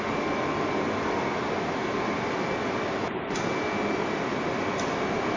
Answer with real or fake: real